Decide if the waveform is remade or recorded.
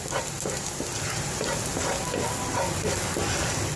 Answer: recorded